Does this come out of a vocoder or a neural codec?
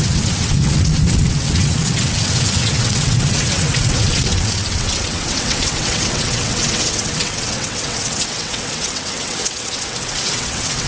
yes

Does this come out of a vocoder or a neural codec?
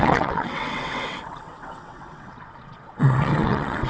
yes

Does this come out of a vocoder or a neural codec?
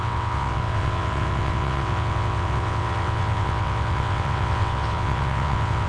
yes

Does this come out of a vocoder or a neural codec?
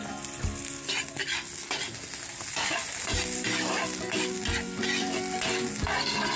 no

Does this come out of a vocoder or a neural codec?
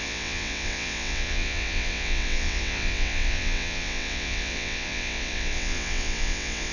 yes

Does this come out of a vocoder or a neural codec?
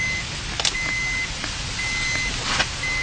no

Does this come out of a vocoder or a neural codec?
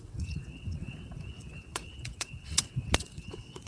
yes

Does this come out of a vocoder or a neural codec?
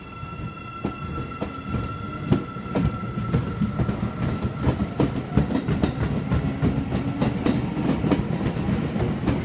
no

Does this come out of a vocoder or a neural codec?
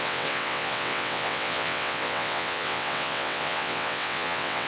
yes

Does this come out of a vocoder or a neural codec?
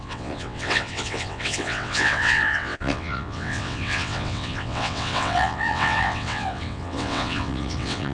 yes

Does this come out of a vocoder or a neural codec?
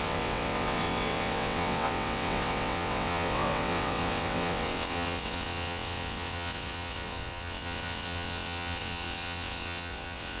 yes